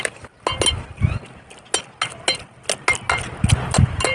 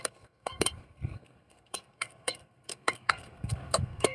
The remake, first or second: second